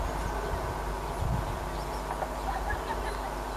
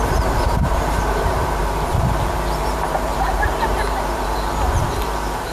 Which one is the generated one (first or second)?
second